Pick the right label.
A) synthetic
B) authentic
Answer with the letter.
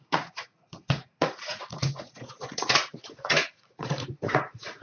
A